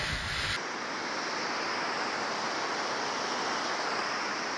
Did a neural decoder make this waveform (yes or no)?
no